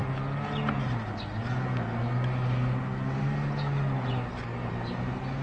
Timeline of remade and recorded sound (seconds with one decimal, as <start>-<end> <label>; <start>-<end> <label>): 0.0-5.4 recorded